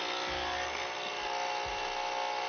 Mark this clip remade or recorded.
recorded